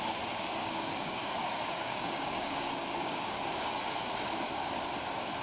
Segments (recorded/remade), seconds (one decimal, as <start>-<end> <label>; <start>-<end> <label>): 0.0-0.6 recorded; 0.6-3.8 remade; 3.8-5.4 recorded